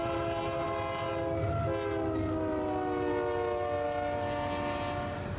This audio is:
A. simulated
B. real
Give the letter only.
B